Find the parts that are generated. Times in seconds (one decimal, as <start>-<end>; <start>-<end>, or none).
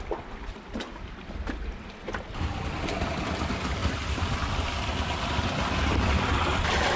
none